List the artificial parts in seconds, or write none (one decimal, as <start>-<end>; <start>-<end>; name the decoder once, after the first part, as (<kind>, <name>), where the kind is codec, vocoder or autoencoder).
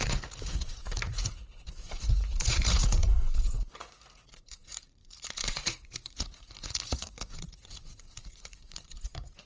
0.0-3.2 (vocoder, Vocos); 3.8-9.5